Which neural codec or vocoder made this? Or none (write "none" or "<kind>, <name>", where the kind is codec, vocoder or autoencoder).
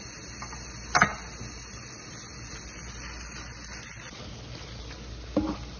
none